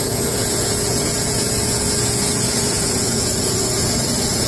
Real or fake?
fake